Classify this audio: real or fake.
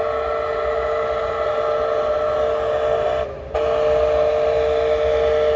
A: real